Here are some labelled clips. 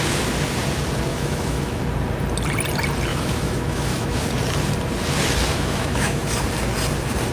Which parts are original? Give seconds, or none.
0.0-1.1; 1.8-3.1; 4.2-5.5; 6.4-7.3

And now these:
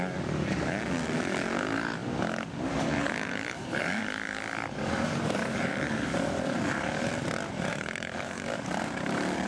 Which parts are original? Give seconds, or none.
7.1-7.7

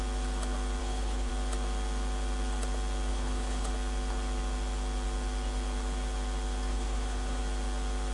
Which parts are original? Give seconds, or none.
0.0-0.8; 1.3-3.1; 3.7-6.7; 7.4-8.1